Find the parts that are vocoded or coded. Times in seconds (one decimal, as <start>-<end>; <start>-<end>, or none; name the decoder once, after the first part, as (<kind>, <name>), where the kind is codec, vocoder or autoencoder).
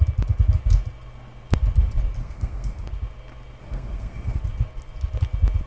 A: 2.2-2.9 (codec, SNAC); 3.6-4.4